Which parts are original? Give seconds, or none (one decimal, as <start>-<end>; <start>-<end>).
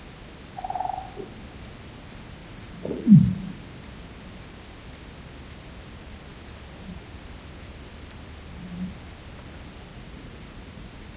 0.0-2.4; 3.6-9.9